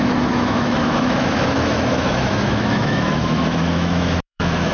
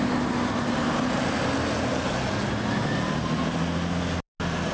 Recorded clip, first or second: second